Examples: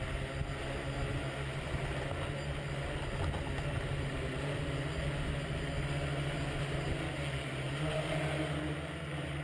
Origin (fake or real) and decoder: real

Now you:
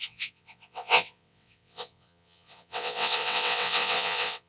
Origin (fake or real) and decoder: fake, vocoder, WaveNeXt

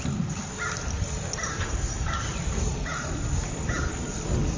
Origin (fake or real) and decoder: real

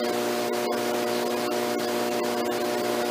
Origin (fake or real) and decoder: real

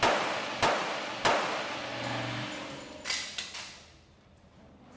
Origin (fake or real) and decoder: real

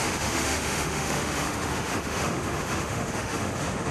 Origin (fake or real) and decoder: fake, autoencoder, DAC-VAE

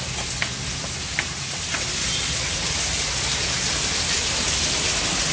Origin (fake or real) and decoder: real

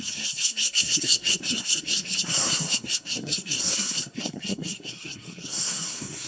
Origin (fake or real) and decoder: fake, codec, SNAC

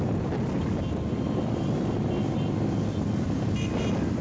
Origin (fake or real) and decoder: real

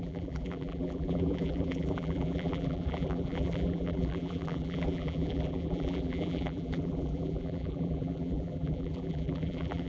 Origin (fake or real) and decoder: fake, vocoder, BigVGAN v2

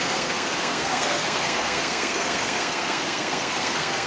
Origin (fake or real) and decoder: fake, codec, SNAC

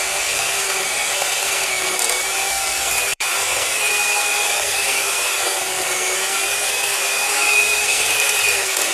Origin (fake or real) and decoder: fake, codec, SNAC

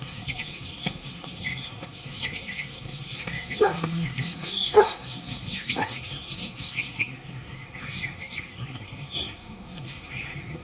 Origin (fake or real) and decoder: fake, codec, SNAC